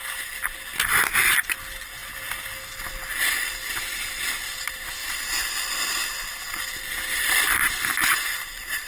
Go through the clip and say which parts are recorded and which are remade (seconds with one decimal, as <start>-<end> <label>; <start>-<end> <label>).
0.0-5.0 recorded; 5.0-5.7 remade; 5.7-7.1 recorded; 7.1-7.6 remade; 7.6-8.9 recorded